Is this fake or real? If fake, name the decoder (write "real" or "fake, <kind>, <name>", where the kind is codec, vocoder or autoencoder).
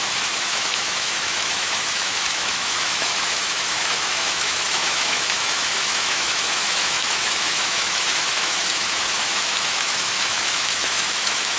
fake, autoencoder, DAC-VAE